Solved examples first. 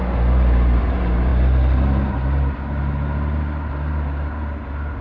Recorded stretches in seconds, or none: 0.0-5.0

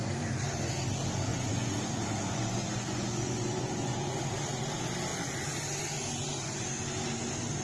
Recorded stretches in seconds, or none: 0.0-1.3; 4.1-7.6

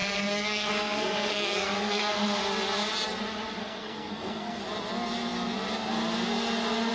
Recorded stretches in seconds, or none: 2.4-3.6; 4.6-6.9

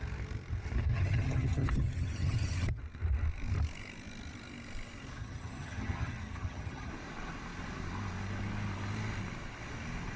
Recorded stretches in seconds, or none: 0.0-0.9; 2.8-5.2; 6.9-10.2